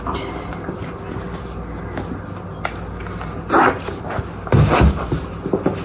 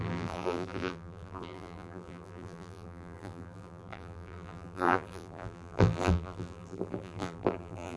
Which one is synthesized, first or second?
second